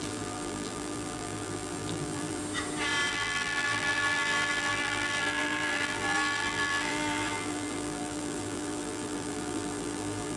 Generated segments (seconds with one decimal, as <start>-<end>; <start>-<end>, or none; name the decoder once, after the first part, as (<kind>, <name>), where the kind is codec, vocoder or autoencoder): 0.0-2.4 (vocoder, BigVGAN v2); 3.1-10.4